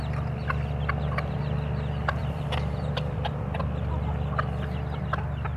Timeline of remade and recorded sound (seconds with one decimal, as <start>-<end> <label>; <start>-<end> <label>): 0.0-2.2 recorded; 2.2-3.6 remade; 3.6-5.6 recorded

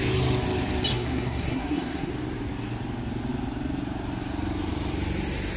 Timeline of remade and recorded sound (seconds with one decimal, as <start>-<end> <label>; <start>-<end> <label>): 0.0-0.9 recorded; 0.9-2.1 remade; 2.1-5.6 recorded